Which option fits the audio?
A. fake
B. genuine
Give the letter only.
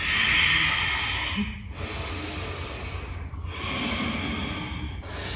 B